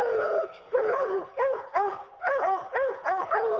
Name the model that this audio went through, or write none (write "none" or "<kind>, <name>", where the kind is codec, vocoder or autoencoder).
codec, HILCodec